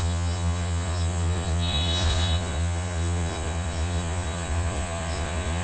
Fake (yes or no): yes